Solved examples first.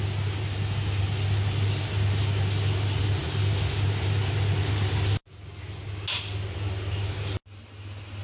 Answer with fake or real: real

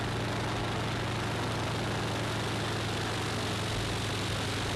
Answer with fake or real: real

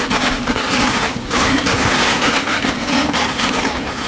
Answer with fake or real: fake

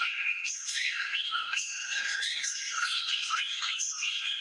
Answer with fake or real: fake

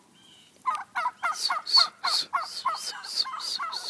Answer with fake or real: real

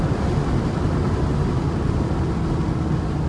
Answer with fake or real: real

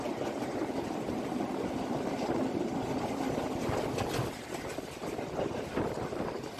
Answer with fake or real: real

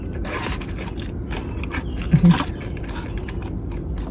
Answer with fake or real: real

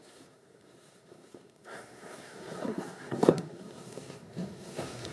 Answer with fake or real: fake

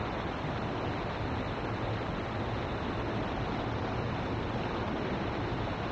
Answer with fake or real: real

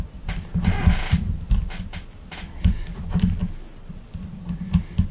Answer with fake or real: real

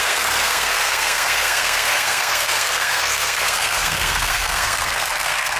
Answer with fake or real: fake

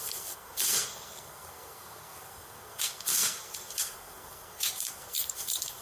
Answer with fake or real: fake